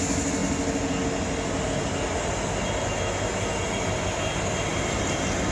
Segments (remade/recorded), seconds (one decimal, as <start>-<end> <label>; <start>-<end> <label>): 0.0-4.7 recorded; 4.7-5.5 remade